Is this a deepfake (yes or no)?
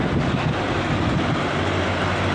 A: no